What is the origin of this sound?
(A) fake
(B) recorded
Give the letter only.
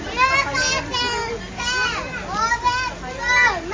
B